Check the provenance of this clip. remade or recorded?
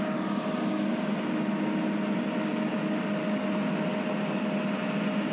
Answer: recorded